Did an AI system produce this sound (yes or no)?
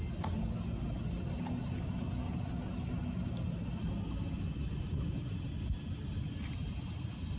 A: no